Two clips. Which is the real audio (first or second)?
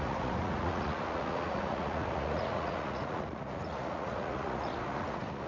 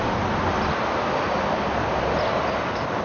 second